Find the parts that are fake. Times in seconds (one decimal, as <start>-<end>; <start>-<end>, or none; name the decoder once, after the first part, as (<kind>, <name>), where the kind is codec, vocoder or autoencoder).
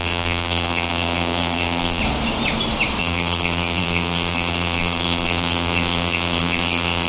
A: 0.0-2.0 (vocoder, BigVGAN v2); 3.0-7.1